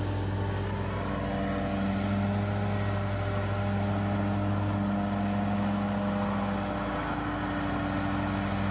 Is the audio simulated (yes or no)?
no